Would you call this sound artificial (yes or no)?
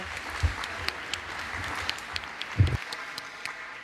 no